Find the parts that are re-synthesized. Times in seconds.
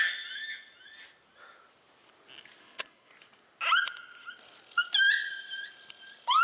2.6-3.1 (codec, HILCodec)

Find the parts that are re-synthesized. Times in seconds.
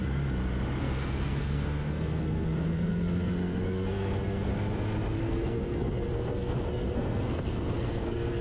0.8-4.5 (codec, SNAC); 5.2-8.4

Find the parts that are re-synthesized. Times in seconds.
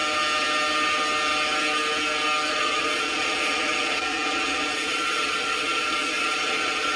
2.5-7.0 (vocoder, Vocos)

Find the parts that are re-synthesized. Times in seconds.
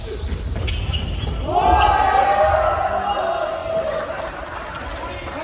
none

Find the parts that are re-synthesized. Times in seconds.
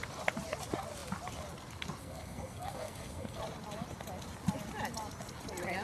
2.0-3.4 (codec, SNAC)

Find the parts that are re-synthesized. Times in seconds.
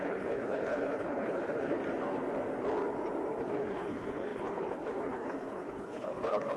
0.0-1.8 (codec, HILCodec); 3.4-6.6